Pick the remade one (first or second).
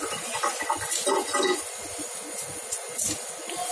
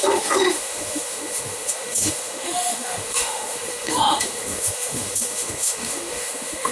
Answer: second